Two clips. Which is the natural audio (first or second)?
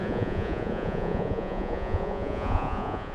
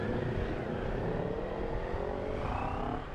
second